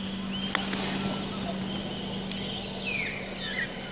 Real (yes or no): yes